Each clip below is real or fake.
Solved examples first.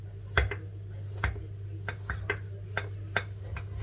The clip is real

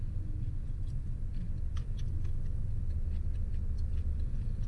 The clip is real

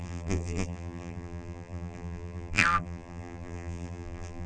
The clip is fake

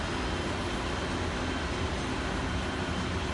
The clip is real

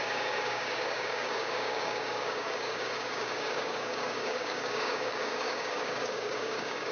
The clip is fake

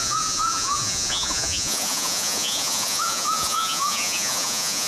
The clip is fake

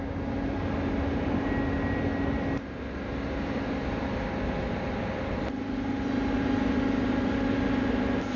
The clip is real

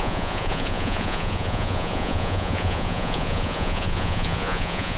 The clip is fake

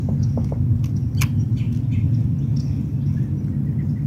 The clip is real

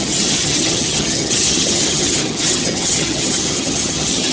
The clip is fake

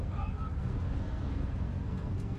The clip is fake